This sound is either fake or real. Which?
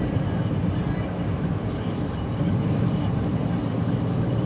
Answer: real